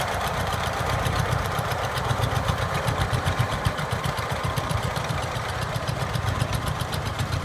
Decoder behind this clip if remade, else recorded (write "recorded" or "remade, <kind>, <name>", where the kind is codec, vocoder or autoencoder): remade, vocoder, BigVGAN v2